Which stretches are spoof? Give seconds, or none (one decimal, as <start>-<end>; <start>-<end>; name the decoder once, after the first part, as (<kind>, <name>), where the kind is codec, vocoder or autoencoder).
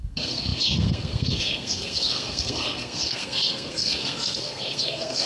0.0-5.3 (codec, SNAC)